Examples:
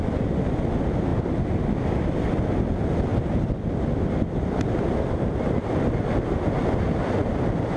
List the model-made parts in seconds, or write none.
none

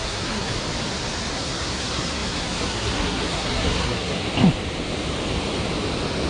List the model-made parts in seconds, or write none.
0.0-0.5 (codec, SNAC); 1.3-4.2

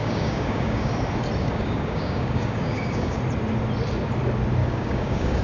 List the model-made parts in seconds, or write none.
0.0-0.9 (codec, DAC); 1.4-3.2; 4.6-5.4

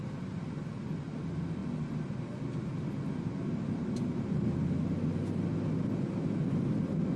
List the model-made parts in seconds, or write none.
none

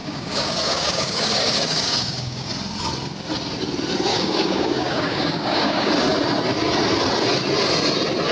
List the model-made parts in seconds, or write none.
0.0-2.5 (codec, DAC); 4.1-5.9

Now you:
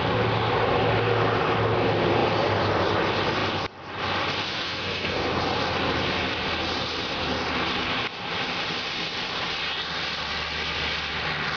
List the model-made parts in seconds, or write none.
4.4-5.3 (codec, SNAC)